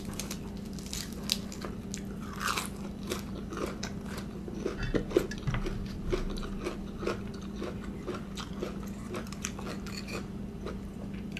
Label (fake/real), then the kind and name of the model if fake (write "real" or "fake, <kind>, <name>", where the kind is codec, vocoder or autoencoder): real